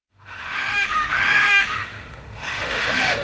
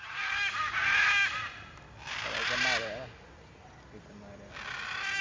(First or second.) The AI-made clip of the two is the first